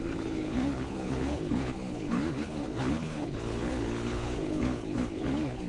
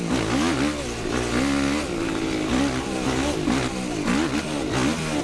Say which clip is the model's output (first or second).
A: first